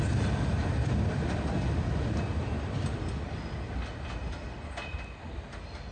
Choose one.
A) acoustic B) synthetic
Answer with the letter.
A